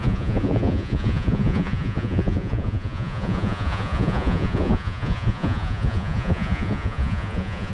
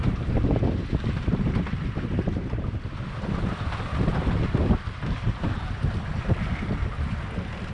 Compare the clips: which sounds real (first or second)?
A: second